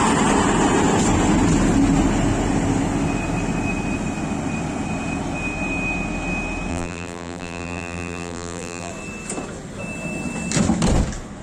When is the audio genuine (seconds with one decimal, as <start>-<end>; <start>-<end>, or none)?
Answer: 0.0-6.7; 8.9-11.4